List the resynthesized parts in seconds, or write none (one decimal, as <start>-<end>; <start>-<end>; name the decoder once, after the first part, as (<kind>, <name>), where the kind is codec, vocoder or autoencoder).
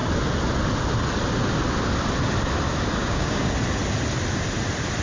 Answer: 3.0-3.5 (codec, DAC)